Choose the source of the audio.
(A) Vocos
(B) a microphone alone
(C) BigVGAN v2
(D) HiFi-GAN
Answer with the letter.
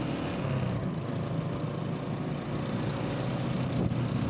B